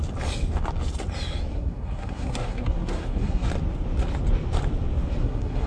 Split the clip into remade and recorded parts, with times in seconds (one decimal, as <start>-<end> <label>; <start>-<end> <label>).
0.0-1.5 recorded; 1.5-3.5 remade; 3.5-5.2 recorded; 5.2-5.7 remade